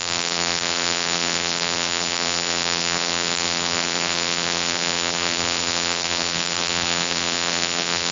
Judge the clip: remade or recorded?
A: remade